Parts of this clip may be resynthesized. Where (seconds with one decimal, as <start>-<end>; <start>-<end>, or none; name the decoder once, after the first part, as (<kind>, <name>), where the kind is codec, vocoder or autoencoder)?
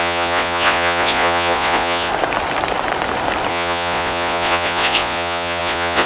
0.0-2.1 (vocoder, Vocos); 3.5-6.1